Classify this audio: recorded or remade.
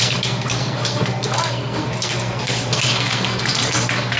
remade